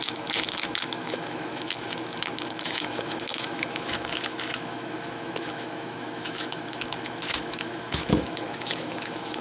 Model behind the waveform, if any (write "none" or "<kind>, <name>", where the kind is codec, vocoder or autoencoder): autoencoder, DAC-VAE